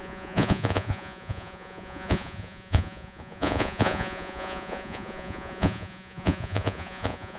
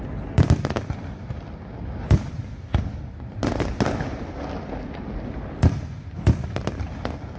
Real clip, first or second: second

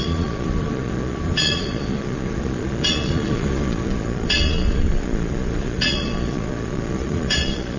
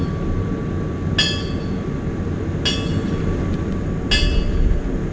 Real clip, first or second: second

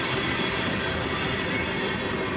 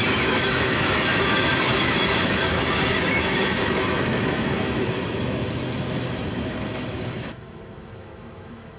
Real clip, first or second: first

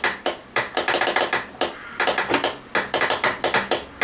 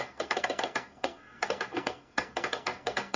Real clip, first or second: first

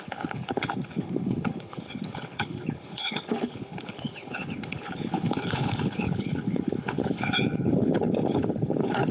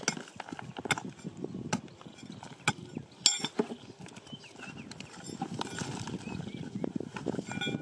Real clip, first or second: second